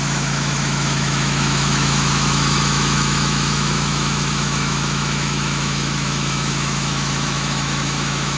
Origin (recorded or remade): remade